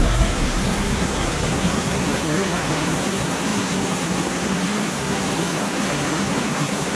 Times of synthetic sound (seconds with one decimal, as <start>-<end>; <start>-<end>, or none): 0.0-6.9